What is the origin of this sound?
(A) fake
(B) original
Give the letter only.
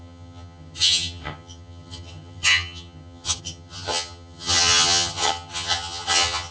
A